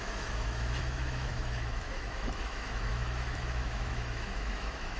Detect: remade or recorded remade